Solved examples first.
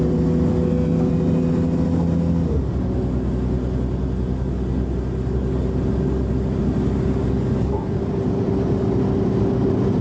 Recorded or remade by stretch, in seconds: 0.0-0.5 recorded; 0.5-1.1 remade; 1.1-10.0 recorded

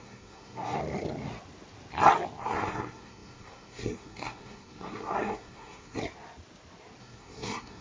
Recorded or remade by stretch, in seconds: 0.0-0.8 remade; 0.8-2.4 recorded; 2.4-6.0 remade; 6.0-7.0 recorded; 7.0-7.8 remade

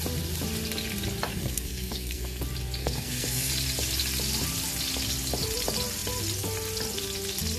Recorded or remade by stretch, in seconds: 0.0-1.3 recorded; 1.3-2.4 remade; 2.4-2.8 recorded; 2.8-3.5 remade; 3.5-7.6 recorded

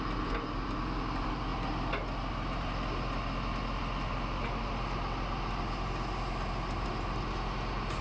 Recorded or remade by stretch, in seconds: 0.0-8.0 recorded

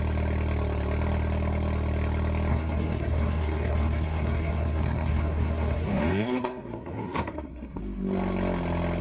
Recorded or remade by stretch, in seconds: 0.0-2.5 recorded; 2.5-7.8 remade; 7.8-9.0 recorded

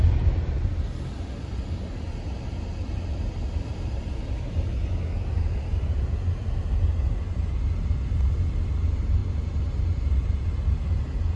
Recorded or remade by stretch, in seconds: 0.0-11.4 recorded